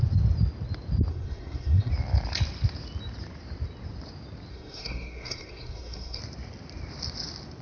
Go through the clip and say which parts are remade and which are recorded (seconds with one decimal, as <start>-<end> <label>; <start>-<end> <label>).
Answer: 0.0-1.1 recorded; 1.1-1.9 remade; 1.9-4.5 recorded; 4.5-6.2 remade; 6.2-7.6 recorded